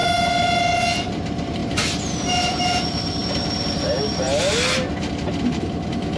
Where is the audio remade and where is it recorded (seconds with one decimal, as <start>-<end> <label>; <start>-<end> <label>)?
0.0-0.8 remade; 0.8-1.6 recorded; 1.6-2.8 remade; 2.8-6.2 recorded